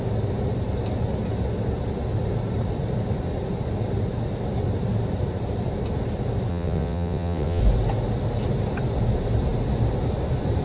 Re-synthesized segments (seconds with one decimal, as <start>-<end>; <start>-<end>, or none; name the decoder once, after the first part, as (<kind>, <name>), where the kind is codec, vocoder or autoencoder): 6.5-7.6 (vocoder, WaveNeXt)